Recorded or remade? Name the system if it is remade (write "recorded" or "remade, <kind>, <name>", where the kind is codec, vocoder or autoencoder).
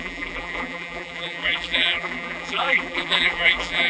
remade, vocoder, BigVGAN v2